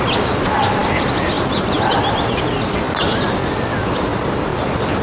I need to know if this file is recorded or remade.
recorded